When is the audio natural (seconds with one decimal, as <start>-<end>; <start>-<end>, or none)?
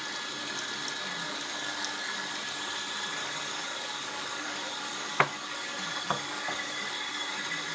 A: 0.0-1.2; 2.3-3.2; 7.3-7.7